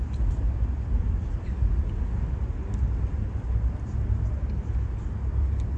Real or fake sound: real